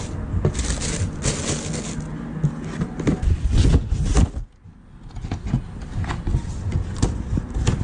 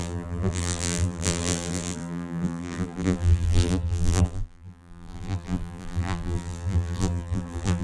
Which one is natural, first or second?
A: first